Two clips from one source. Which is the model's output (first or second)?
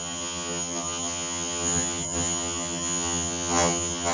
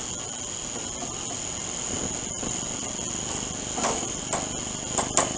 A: first